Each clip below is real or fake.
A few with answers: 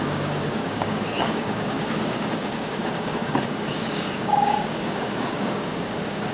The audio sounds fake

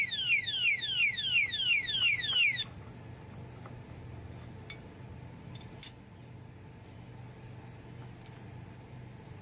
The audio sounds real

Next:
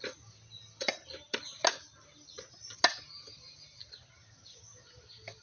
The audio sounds real